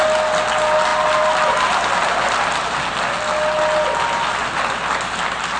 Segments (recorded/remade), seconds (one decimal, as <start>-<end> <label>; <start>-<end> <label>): 0.0-5.6 recorded